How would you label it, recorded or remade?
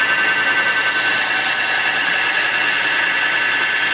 recorded